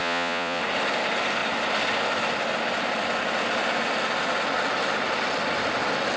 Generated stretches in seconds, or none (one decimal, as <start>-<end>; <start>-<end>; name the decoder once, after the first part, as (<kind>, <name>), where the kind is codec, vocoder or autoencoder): 0.0-0.6 (vocoder, Vocos)